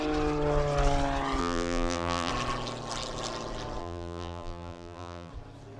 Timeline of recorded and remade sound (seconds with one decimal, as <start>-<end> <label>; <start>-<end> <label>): 0.0-1.4 recorded; 1.4-2.3 remade; 2.3-3.8 recorded; 3.8-5.3 remade; 5.3-5.8 recorded